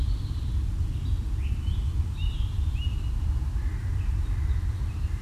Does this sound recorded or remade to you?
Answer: recorded